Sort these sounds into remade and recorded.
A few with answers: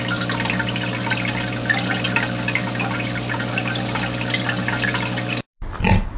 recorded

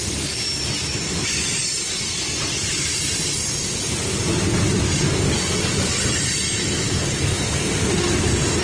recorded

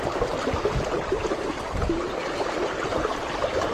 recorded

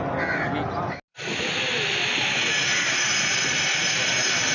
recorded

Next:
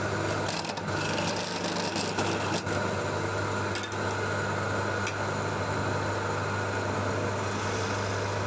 recorded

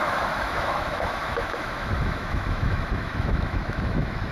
remade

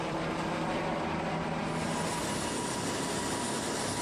recorded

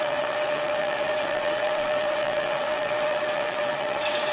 remade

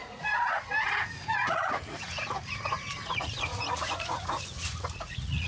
remade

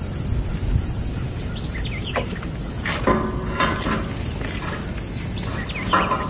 recorded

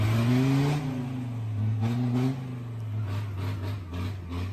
recorded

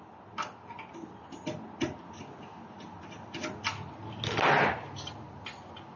recorded